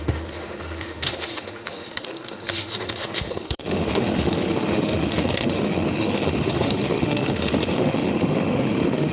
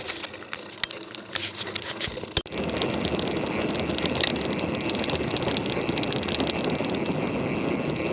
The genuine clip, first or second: second